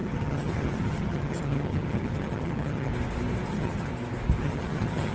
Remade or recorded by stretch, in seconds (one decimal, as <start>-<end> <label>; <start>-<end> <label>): 0.0-2.9 remade; 2.9-3.5 recorded; 3.5-3.9 remade; 3.9-4.4 recorded; 4.4-5.1 remade